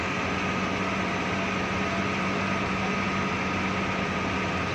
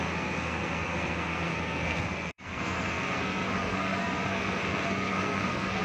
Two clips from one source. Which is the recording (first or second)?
first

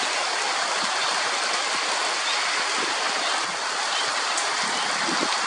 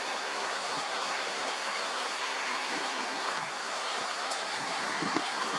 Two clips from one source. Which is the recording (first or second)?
first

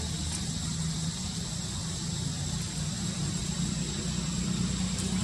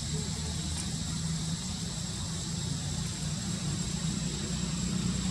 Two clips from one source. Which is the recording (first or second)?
first